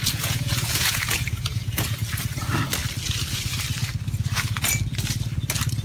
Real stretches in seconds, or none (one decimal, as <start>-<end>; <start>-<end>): 2.0-5.8